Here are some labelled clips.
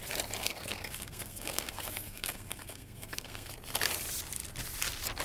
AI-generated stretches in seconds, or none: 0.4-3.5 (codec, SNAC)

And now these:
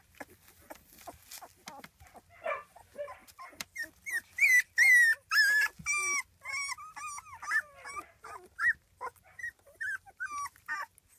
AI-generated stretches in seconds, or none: 3.2-3.9 (vocoder, BigVGAN v2)

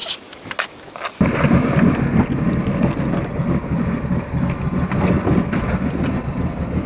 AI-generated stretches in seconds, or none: none

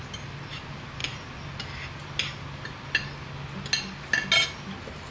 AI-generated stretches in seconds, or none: none

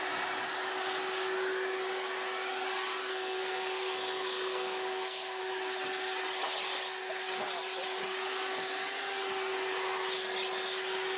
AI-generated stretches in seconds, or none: 3.1-5.4 (codec, SNAC)

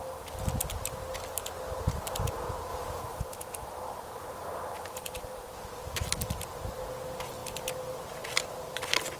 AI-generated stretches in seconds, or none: 2.7-3.2 (vocoder, BigVGAN v2); 3.6-5.4

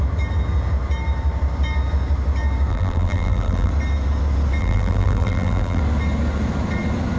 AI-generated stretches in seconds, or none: 2.7-3.7 (vocoder, BigVGAN v2); 4.6-5.8

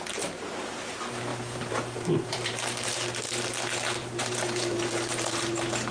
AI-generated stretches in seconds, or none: 1.3-2.6 (vocoder, BigVGAN v2); 4.0-5.4